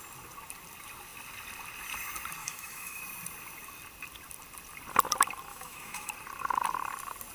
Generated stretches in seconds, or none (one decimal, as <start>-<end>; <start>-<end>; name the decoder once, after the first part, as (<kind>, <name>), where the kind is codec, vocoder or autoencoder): 2.4-3.0 (autoencoder, DAC-VAE); 5.5-6.1